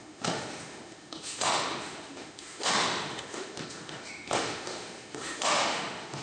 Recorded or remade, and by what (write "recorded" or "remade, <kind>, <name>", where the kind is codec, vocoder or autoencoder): remade, autoencoder, DAC-VAE